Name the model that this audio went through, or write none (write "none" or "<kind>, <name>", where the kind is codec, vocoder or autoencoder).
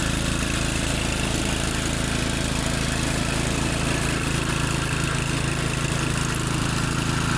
none